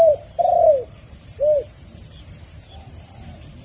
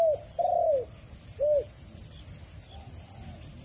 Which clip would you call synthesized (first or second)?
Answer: first